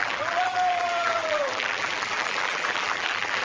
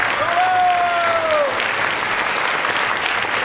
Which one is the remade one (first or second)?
first